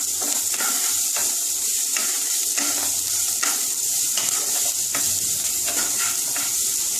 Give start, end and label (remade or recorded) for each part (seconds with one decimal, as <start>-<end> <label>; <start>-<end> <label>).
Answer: 0.0-1.2 recorded; 1.2-5.4 remade; 5.4-7.0 recorded